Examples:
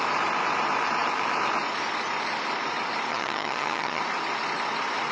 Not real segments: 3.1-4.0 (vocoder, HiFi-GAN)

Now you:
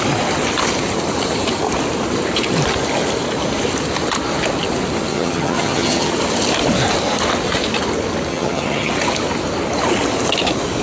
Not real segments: 5.1-6.1 (vocoder, HiFi-GAN); 8.3-8.9

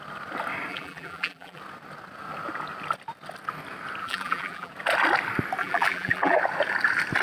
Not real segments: 0.7-1.6 (vocoder, BigVGAN v2); 4.0-4.7; 5.6-6.4

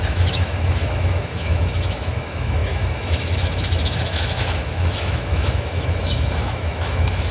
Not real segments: 0.0-7.3 (autoencoder, DAC-VAE)

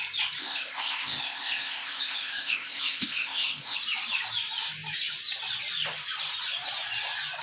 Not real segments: 0.4-3.8 (codec, ZipCodec)

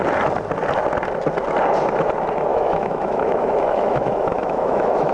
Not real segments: 2.5-5.1 (autoencoder, DAC-VAE)